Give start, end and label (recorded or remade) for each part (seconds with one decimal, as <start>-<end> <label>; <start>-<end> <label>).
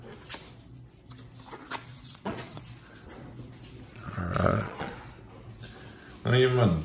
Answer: 0.0-1.9 recorded; 1.9-2.6 remade; 2.6-3.9 recorded; 3.9-4.9 remade; 4.9-6.8 recorded